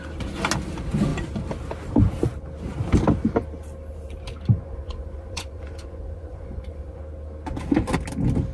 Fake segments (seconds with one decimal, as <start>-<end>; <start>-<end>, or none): 4.5-7.0